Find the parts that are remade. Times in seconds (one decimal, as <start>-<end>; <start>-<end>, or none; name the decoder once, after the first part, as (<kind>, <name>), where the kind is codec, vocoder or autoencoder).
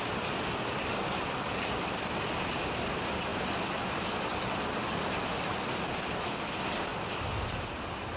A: none